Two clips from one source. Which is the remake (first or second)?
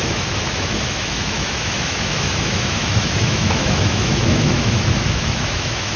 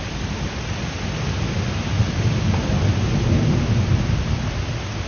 first